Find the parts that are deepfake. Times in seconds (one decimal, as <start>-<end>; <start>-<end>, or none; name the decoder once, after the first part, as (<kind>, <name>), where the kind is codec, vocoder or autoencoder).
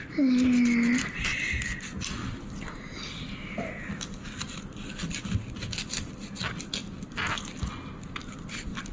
none